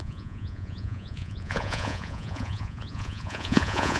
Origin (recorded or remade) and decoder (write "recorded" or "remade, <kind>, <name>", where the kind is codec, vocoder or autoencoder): remade, vocoder, Vocos